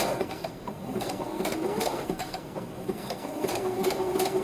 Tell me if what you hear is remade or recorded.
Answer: remade